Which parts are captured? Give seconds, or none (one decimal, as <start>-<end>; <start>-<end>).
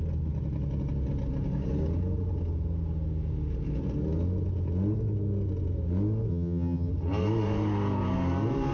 0.0-6.3; 6.9-8.7